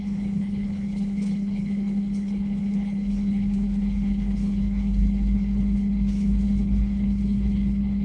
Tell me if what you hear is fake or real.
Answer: fake